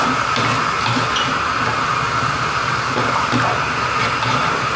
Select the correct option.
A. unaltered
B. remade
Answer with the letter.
A